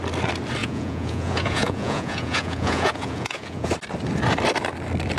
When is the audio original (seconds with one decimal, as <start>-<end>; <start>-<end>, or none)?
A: 0.0-0.6; 3.7-5.2